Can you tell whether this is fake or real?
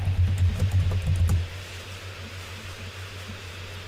fake